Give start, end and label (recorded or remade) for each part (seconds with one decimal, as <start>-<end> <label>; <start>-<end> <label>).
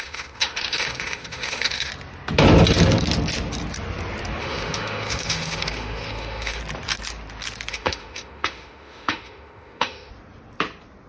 0.0-1.9 remade; 1.9-4.4 recorded; 4.4-6.6 remade; 6.6-7.7 recorded; 7.7-10.1 remade; 10.1-11.1 recorded